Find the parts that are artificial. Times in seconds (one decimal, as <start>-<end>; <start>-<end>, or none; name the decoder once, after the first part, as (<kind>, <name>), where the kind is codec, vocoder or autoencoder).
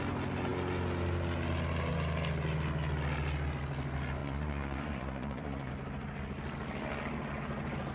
4.2-5.7 (vocoder, Vocos)